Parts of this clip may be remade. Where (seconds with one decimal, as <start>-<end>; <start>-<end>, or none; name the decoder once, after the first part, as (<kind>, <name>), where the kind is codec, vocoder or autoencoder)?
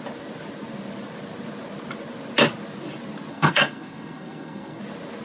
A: 3.3-4.8 (codec, SNAC)